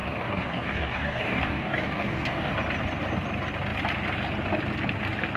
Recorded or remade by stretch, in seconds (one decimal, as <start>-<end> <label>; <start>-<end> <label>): 0.0-2.5 remade; 2.5-5.4 recorded

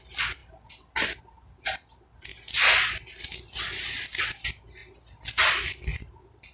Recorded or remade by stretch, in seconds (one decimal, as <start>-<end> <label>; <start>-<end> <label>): 0.0-6.5 recorded

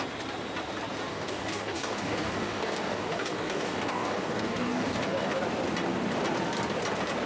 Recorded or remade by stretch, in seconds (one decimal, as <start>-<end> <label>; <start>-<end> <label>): 0.0-1.1 recorded; 1.1-5.4 remade; 5.4-7.3 recorded